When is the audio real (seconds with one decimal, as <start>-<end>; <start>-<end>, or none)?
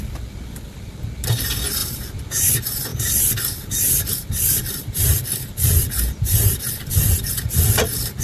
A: 0.0-2.9; 7.3-8.2